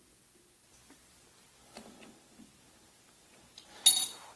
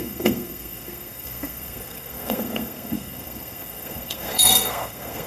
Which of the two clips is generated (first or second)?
second